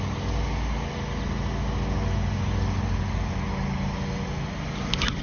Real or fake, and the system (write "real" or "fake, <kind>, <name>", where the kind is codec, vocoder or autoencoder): real